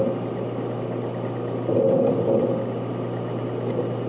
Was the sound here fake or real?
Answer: real